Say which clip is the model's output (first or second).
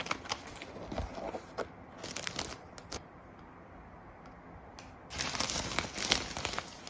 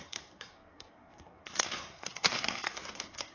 second